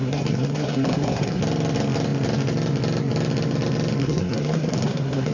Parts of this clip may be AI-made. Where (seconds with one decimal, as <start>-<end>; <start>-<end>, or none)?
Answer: 0.0-1.4; 4.0-5.3